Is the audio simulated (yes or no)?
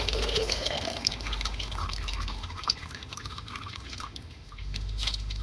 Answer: yes